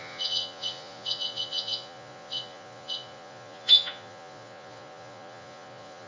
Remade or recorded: remade